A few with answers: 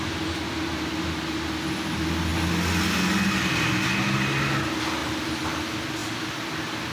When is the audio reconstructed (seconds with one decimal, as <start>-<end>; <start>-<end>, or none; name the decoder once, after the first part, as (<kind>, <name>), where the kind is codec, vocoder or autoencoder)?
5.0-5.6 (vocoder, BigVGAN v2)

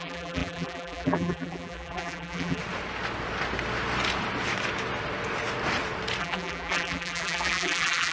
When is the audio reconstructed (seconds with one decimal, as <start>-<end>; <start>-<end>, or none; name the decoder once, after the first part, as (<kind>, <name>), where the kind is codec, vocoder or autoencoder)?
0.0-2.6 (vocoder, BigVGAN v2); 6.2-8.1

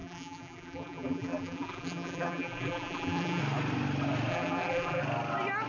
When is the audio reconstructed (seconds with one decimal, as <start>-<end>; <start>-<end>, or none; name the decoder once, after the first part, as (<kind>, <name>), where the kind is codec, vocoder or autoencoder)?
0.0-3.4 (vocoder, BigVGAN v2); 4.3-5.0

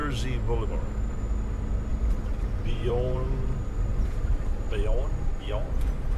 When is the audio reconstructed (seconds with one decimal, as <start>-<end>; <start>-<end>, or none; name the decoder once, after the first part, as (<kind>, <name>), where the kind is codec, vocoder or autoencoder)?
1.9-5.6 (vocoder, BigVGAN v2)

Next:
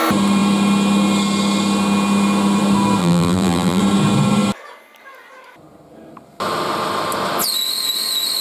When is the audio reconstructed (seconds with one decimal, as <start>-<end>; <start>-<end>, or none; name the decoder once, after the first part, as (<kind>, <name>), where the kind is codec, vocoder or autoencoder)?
3.0-3.8 (vocoder, BigVGAN v2)

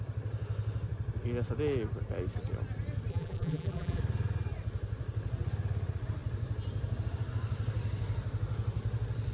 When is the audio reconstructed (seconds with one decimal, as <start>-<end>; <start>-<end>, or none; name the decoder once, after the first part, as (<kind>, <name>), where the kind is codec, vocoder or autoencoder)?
3.1-4.0 (vocoder, BigVGAN v2)

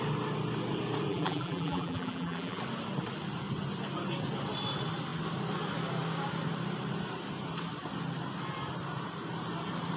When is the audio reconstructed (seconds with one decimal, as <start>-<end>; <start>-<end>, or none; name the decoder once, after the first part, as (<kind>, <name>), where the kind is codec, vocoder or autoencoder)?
1.1-2.6 (vocoder, BigVGAN v2)